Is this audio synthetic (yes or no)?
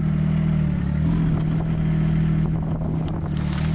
no